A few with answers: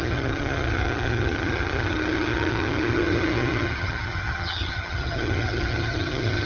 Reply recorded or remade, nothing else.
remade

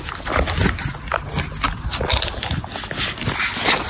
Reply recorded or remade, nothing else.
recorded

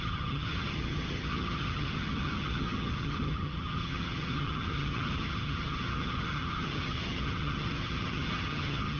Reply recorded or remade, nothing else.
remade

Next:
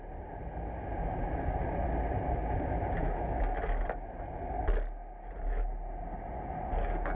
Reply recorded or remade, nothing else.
recorded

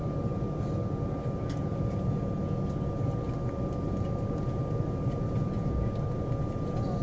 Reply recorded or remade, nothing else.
recorded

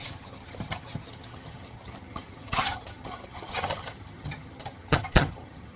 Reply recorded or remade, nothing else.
remade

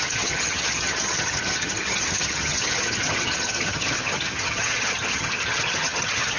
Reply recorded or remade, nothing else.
remade